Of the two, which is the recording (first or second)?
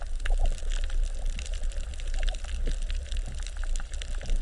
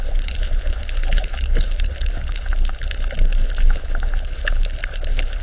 first